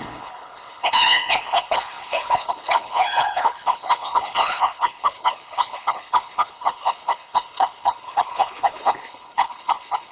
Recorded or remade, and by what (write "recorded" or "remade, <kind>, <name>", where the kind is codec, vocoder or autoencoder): remade, codec, HILCodec